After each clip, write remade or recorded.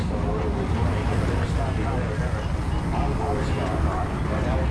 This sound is recorded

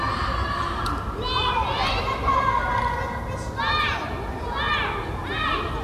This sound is recorded